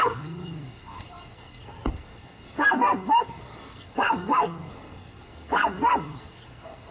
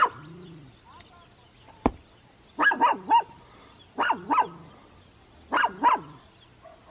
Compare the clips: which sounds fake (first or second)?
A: first